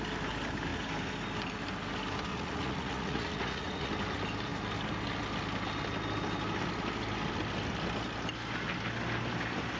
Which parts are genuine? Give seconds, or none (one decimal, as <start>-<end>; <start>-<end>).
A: 0.0-2.3; 3.9-9.8